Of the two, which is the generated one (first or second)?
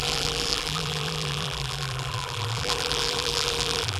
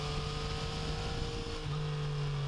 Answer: first